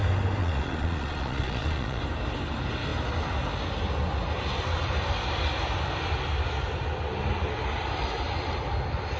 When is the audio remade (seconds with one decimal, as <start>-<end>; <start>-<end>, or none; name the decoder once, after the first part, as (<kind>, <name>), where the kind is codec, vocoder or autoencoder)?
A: 0.4-2.0 (vocoder, Vocos)